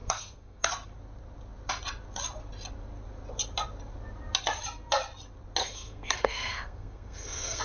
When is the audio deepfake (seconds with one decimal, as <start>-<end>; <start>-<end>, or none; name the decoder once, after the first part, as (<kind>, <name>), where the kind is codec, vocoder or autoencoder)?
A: 0.0-0.7 (codec, SNAC); 5.6-7.6